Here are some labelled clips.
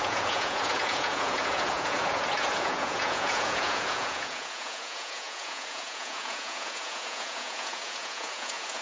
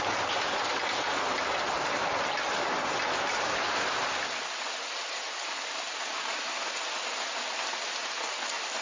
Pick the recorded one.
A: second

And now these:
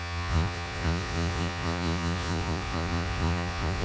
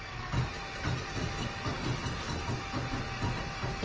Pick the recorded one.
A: second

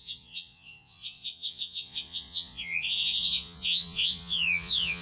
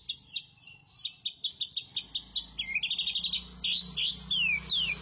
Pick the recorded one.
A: second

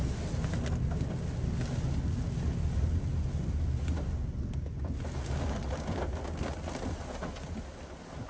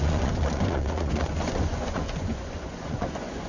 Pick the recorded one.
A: first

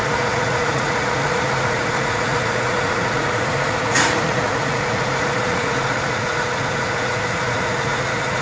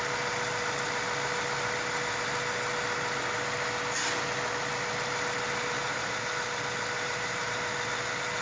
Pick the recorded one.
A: second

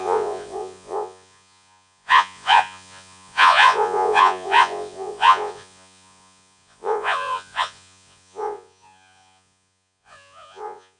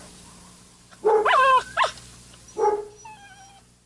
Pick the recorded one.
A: second